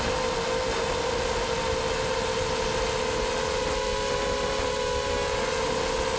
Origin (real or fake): real